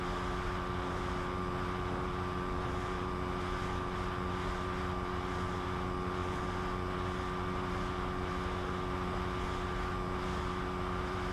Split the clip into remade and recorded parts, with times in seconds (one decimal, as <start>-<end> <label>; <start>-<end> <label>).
0.0-11.3 recorded